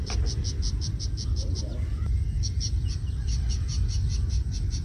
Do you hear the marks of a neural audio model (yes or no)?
no